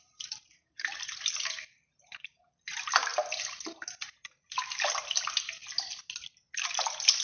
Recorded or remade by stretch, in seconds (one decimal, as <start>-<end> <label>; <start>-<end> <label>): 0.0-3.1 remade; 3.1-4.0 recorded; 4.0-5.6 remade; 5.6-6.6 recorded; 6.6-7.2 remade